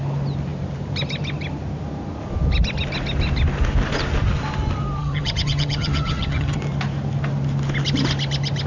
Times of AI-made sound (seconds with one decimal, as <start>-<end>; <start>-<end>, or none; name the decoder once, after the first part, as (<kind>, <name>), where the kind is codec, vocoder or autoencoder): 5.0-6.6 (vocoder, HiFi-GAN)